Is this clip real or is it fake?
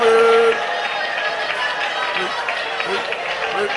real